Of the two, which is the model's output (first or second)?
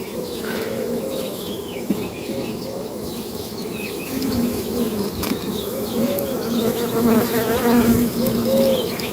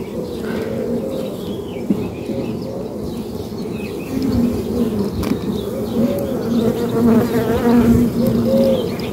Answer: first